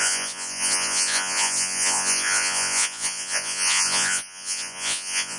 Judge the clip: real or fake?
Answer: fake